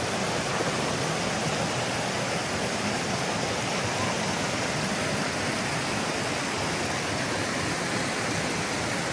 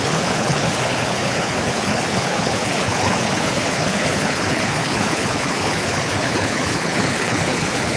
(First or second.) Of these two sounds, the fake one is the second